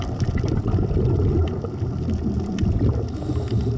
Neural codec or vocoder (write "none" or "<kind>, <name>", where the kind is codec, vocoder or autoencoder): none